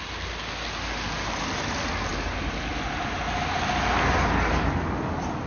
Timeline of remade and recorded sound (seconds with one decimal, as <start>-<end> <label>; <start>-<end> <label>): 0.0-5.5 recorded